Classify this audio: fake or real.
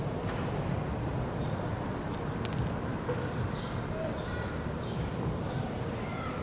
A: real